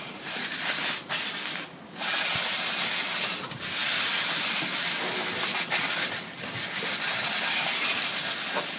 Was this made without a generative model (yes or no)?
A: yes